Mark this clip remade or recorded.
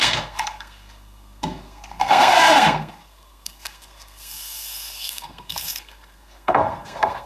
remade